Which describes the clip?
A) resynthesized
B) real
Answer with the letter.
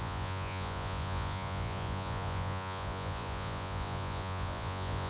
A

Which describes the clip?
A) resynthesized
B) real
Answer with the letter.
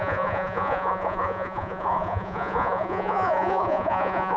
A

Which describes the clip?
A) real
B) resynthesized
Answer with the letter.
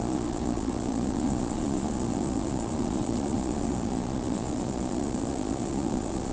B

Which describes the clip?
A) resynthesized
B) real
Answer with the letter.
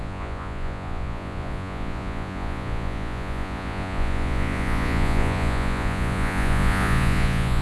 A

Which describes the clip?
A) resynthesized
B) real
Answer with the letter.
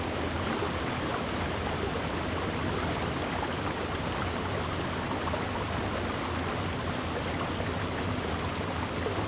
B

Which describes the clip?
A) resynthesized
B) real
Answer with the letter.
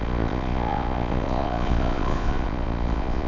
A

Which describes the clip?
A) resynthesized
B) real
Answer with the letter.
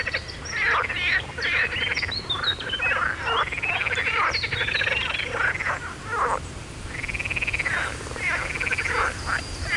B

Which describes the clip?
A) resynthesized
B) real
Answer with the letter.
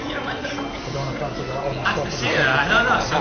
B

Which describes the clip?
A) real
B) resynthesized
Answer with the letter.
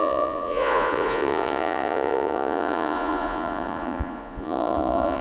B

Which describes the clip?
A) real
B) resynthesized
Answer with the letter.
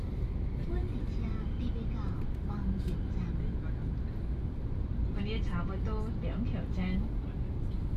A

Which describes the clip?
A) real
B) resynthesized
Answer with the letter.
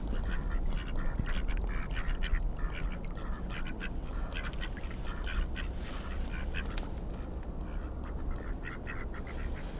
A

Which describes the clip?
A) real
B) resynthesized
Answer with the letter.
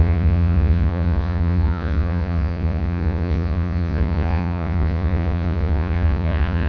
B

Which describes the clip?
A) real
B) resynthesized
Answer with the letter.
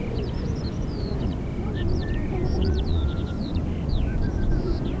B